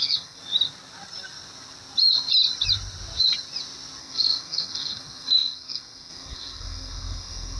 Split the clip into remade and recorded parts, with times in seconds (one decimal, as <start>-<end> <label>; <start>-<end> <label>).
0.0-0.4 remade; 0.4-4.0 recorded; 4.0-7.6 remade